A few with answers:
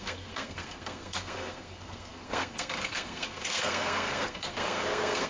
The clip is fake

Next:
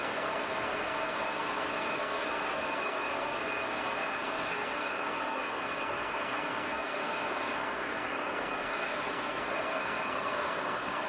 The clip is fake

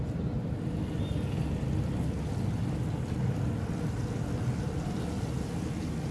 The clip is real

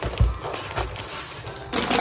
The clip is real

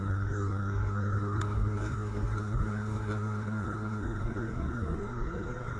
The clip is fake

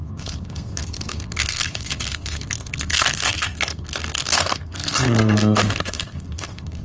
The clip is fake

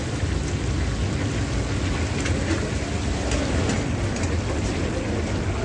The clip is real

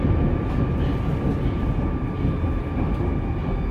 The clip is real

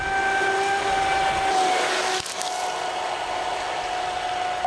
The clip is real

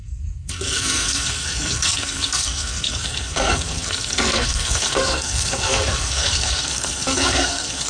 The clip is fake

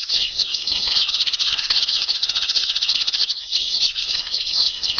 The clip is fake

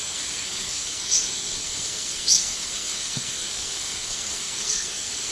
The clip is fake